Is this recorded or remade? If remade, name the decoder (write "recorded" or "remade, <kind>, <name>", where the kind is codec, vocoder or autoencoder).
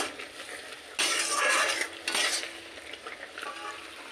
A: recorded